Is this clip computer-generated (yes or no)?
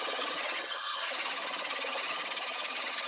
yes